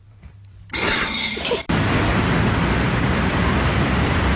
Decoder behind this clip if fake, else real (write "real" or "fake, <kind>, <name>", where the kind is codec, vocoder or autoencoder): fake, vocoder, BigVGAN v2